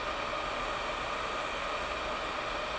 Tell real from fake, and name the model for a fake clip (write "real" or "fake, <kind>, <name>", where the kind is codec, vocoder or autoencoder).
real